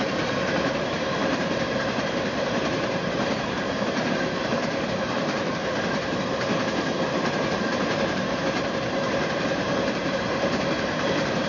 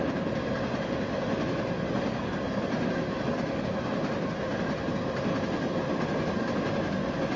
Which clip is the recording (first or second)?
second